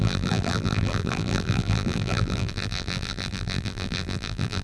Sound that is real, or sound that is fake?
fake